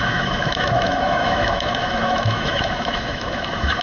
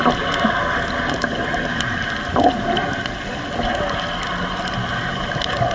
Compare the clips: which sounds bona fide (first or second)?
second